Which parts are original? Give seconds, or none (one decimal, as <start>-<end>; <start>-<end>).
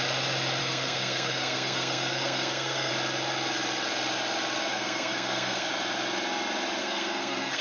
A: 0.0-0.6; 2.9-4.7; 5.7-6.8